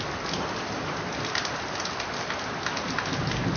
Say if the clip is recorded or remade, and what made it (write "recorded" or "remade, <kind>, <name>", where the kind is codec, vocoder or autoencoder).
recorded